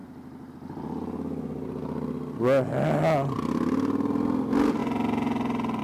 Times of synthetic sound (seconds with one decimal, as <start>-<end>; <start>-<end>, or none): none